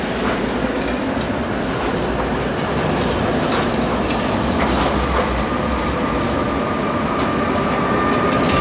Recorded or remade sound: recorded